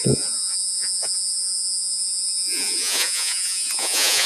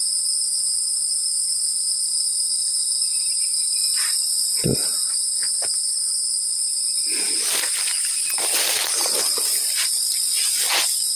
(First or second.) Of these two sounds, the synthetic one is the first